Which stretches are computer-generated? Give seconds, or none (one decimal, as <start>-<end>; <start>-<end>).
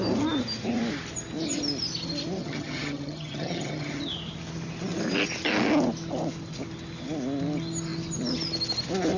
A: 2.4-4.0